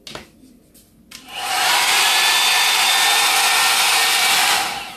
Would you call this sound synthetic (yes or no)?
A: no